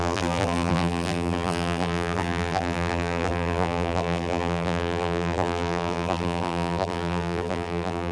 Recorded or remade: remade